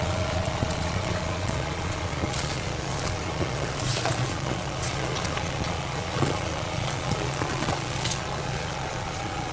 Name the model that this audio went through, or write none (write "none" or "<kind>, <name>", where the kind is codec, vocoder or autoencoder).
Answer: vocoder, Vocos